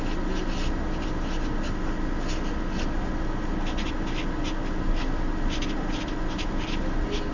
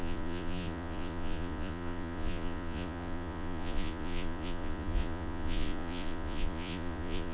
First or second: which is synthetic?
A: second